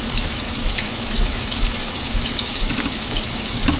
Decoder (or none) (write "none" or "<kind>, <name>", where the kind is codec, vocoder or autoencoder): autoencoder, DAC-VAE